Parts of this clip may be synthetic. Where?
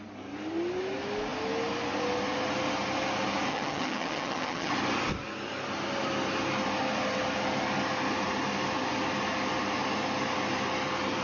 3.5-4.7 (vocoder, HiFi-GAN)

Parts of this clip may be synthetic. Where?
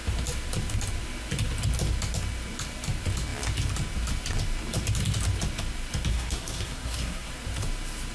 6.1-7.3 (codec, SNAC)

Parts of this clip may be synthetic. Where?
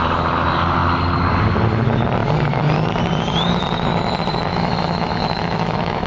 4.5-6.1 (autoencoder, DAC-VAE)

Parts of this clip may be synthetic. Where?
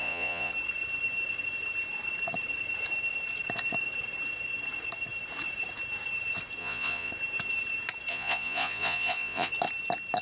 0.0-0.5 (vocoder, Vocos); 6.6-7.1; 8.1-9.5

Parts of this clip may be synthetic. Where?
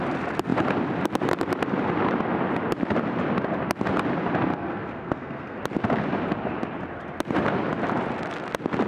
4.5-5.6 (codec, SNAC)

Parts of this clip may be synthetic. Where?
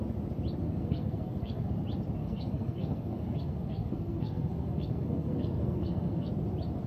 0.6-1.7 (codec, SNAC); 2.2-6.3